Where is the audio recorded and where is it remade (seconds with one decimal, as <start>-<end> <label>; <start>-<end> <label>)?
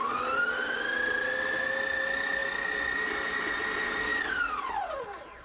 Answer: 0.0-5.4 recorded